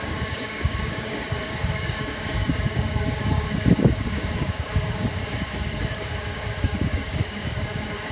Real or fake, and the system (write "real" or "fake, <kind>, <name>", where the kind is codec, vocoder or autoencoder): fake, codec, DAC